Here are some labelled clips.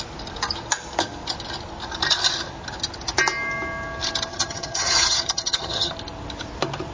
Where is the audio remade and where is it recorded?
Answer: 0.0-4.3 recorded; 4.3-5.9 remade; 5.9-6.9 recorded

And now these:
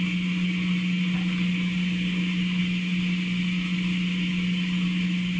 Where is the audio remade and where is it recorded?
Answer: 0.0-5.4 recorded

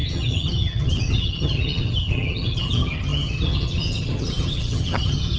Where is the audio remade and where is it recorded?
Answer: 0.0-5.4 remade